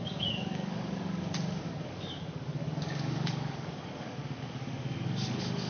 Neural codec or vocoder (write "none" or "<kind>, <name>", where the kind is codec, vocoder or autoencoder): codec, DAC